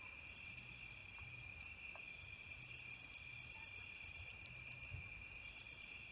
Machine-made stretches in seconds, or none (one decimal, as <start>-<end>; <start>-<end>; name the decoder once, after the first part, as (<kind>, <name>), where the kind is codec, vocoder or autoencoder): none